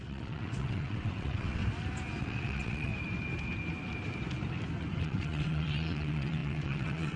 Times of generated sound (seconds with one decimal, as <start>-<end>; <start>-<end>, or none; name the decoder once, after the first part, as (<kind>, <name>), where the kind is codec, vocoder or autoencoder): 0.0-1.6 (vocoder, WaveNeXt); 2.2-2.9; 5.0-7.2